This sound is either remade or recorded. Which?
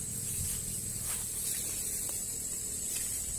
remade